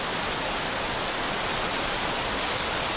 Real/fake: real